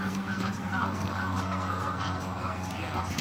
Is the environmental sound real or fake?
fake